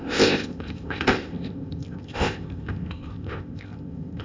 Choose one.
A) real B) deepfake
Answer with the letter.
B